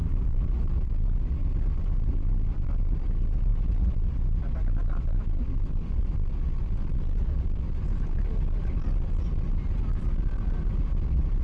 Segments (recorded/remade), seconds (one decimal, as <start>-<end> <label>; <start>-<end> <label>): 0.0-0.9 remade; 0.9-11.4 recorded